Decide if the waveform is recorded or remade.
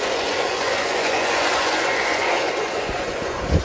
remade